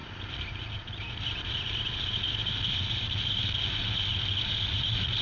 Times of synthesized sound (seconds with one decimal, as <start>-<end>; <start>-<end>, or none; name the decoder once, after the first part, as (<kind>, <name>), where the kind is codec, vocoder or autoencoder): none